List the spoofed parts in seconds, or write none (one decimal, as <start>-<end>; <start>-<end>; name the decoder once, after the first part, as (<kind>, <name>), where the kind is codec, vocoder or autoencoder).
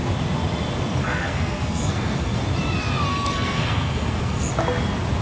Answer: 1.0-2.4 (codec, SNAC); 3.1-4.5